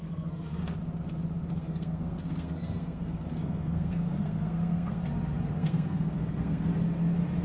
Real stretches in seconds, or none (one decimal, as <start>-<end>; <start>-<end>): 0.6-1.5; 5.0-5.6; 6.7-7.4